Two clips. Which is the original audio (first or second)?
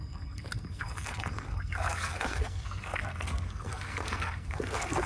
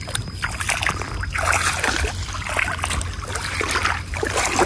second